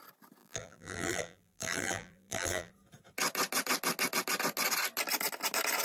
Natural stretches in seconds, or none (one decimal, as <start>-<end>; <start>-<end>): 0.0-0.4; 2.7-5.8